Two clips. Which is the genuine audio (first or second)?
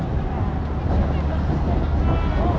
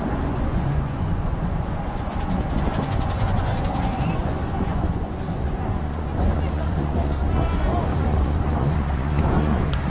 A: first